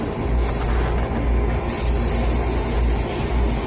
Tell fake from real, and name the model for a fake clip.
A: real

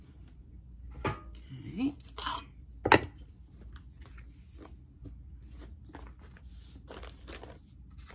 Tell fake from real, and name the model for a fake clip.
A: real